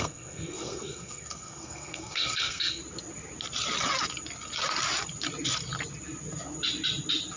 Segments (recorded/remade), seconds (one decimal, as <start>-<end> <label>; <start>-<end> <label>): 0.0-2.8 remade; 2.8-7.4 recorded